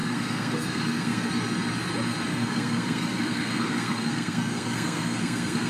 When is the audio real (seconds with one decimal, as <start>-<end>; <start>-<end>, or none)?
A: 1.3-2.3